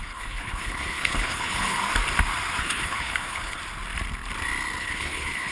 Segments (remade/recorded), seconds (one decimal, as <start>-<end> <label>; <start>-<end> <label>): 0.0-1.8 remade; 1.8-2.6 recorded; 2.6-3.6 remade; 3.6-4.8 recorded; 4.8-5.5 remade